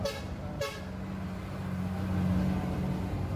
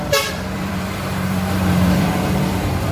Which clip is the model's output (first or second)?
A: second